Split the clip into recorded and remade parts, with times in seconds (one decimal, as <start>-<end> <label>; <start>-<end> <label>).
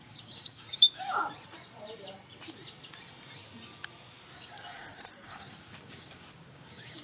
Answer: 0.0-1.2 remade; 1.2-4.3 recorded; 4.3-7.0 remade